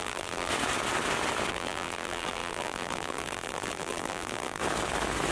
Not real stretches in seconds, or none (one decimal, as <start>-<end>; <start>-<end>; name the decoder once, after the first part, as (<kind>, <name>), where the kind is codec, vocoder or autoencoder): 0.0-0.5 (vocoder, BigVGAN v2); 1.5-4.6